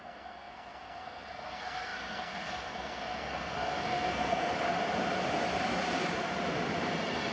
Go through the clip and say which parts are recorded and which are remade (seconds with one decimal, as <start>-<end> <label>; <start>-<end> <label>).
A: 0.0-4.5 remade; 4.5-7.3 recorded